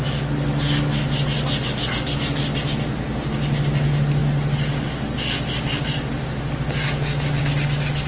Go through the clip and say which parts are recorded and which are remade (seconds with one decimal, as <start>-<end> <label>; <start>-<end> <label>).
0.0-8.1 recorded